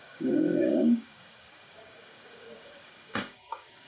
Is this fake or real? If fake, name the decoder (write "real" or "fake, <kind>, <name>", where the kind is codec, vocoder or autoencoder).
fake, codec, DAC